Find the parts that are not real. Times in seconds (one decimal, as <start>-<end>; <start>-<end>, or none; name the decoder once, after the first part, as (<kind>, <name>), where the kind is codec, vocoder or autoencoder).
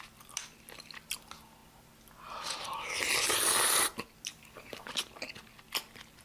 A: 4.3-5.0 (codec, DAC)